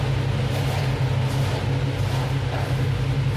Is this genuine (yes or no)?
yes